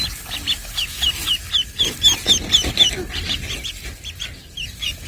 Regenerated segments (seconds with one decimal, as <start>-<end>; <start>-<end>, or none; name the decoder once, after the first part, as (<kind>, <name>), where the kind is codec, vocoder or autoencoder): none

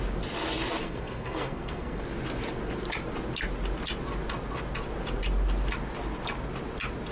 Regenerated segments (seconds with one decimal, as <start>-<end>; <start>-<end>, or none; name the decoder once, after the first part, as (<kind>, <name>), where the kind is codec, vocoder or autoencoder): 0.8-2.0 (codec, SNAC)

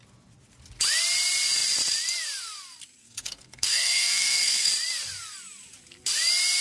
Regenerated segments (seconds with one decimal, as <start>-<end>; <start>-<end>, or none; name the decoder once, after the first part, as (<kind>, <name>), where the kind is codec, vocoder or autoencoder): 3.0-4.7 (codec, SNAC)

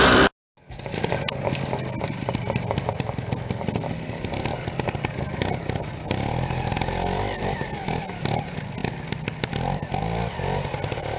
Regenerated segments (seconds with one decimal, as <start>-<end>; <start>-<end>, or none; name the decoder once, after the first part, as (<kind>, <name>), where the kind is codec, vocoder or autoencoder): none